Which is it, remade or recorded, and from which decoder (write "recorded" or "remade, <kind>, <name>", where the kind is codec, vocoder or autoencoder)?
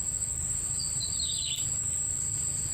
recorded